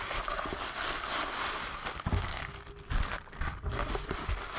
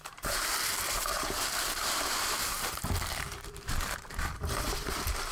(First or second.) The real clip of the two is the first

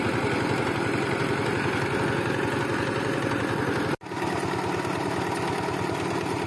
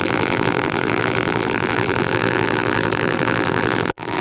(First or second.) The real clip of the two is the first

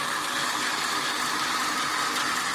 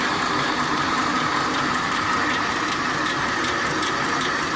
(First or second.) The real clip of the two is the first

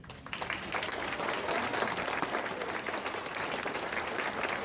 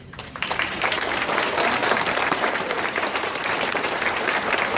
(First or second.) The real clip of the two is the first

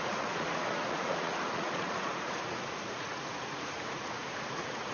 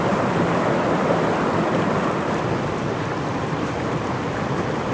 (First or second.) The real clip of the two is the second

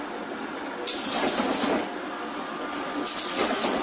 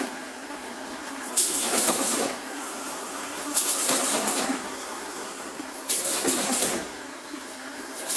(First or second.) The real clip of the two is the first